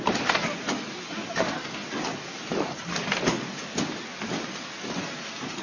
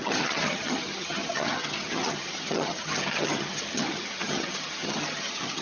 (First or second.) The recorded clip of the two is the first